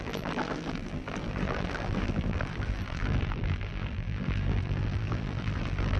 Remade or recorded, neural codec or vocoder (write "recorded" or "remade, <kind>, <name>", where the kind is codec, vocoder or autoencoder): remade, vocoder, BigVGAN v2